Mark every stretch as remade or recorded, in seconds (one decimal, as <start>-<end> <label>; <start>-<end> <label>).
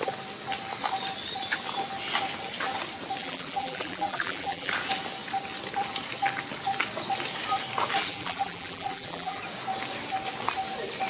0.0-3.2 recorded; 3.2-4.7 remade; 4.7-8.0 recorded; 8.0-9.4 remade; 9.4-11.1 recorded